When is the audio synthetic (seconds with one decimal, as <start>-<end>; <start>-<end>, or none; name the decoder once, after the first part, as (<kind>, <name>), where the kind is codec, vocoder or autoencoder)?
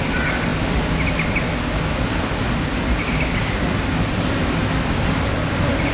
none